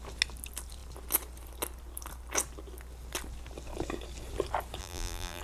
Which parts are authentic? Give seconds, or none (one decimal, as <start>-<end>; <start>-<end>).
0.0-4.8